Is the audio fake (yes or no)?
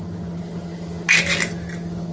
no